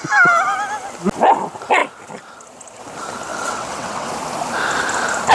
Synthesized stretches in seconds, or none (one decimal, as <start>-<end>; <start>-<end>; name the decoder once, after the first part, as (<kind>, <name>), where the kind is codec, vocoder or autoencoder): 3.3-4.1 (vocoder, WaveNeXt)